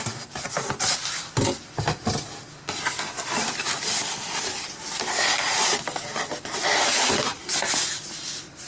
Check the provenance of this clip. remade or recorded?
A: recorded